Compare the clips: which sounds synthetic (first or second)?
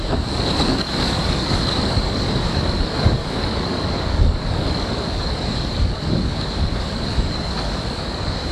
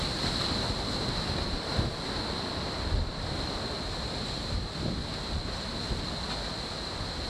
first